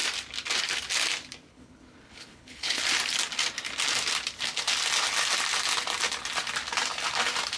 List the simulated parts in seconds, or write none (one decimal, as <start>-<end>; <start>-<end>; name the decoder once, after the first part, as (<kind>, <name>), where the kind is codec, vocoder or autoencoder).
1.5-2.8 (codec, HILCodec)